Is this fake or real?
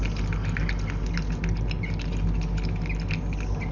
real